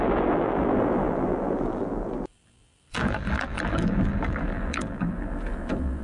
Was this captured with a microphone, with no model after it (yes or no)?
no